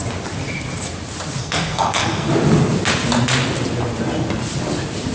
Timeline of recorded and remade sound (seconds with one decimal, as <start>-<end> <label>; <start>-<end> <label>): 0.0-1.4 recorded; 1.4-2.3 remade; 2.3-5.1 recorded